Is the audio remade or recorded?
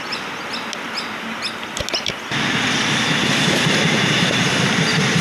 recorded